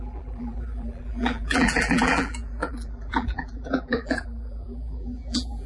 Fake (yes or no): yes